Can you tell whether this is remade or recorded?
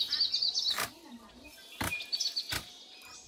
recorded